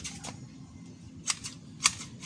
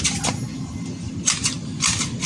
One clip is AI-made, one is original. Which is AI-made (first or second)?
second